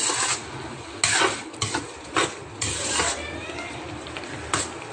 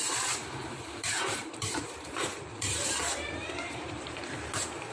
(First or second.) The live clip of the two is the first